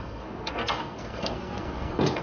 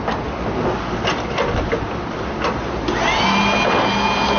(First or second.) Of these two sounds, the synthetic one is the first